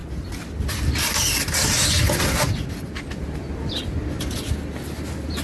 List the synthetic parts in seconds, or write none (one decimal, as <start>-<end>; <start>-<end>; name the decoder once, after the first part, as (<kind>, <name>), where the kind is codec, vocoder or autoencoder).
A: none

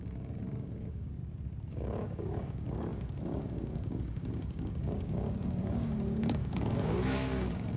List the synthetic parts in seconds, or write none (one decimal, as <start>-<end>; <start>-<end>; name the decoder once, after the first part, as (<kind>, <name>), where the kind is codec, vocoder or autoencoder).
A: 0.0-1.2 (codec, DAC); 1.7-7.8

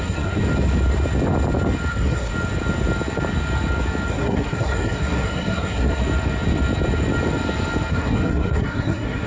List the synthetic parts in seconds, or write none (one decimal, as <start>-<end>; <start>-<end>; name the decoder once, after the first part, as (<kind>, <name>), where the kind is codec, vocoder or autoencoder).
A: 0.0-0.4 (codec, SNAC); 1.9-2.3; 4.1-6.0; 7.9-9.3